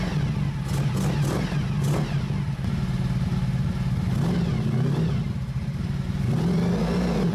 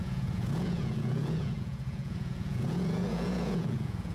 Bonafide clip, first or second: first